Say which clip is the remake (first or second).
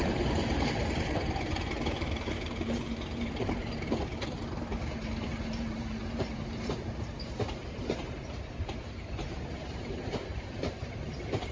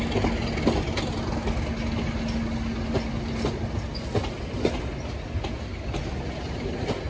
first